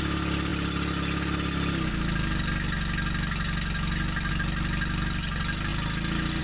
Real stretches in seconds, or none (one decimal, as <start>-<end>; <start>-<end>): 0.0-6.4